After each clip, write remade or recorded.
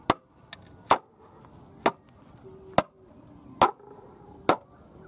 recorded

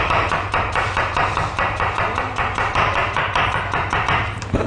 remade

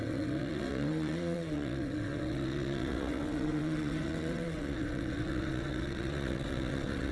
remade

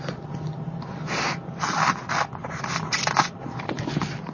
recorded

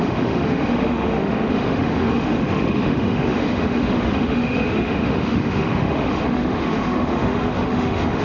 remade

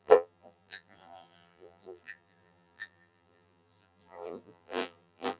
remade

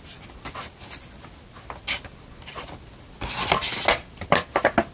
recorded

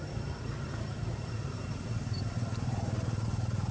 remade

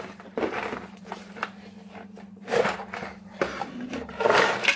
remade